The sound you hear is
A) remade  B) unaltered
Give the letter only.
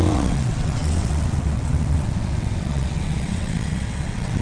A